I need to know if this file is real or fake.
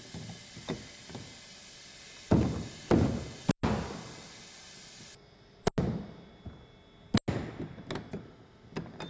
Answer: real